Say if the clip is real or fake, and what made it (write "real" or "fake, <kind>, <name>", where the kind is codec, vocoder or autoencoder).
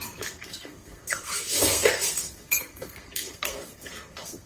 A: fake, codec, SNAC